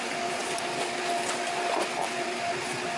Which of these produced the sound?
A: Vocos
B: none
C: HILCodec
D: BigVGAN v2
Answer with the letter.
B